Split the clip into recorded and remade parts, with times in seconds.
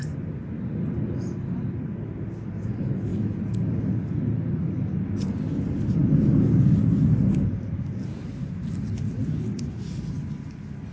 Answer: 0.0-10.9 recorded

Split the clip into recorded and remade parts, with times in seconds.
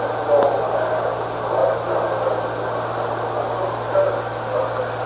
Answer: 0.0-5.1 recorded